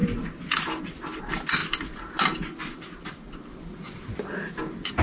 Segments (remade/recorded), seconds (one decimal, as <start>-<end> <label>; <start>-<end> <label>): 0.0-5.0 recorded